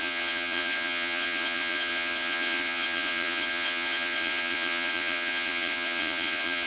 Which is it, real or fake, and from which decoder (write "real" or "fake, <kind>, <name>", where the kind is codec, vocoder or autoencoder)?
fake, vocoder, Vocos